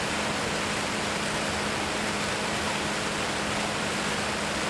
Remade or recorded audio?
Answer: recorded